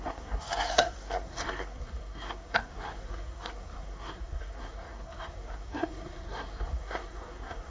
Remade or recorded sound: remade